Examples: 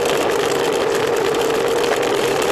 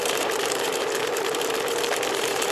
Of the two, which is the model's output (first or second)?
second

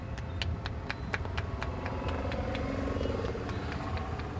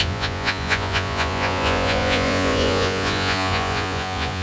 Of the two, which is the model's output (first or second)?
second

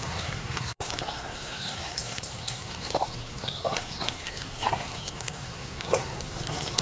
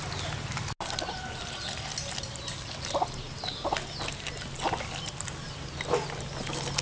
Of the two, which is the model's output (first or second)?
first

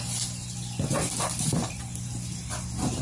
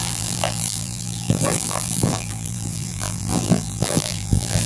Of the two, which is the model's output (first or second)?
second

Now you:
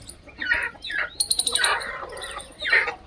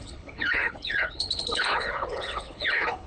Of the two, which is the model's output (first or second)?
second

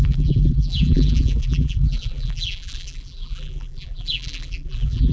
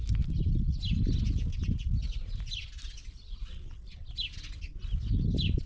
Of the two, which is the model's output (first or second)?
first